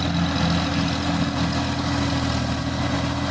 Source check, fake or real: real